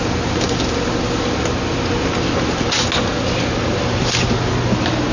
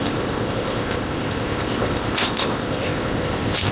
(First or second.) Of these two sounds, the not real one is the second